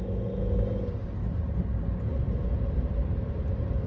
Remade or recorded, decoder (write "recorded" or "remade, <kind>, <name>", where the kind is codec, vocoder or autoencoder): recorded